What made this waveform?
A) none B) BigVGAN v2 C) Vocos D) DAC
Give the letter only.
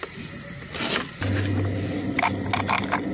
A